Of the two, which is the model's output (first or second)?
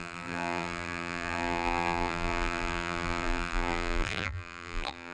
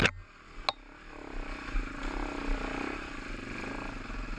first